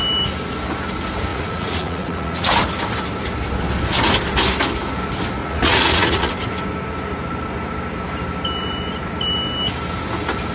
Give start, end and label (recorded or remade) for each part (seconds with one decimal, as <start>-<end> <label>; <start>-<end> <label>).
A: 0.0-1.3 recorded; 1.3-2.5 remade; 2.5-5.4 recorded; 5.4-6.3 remade; 6.3-10.5 recorded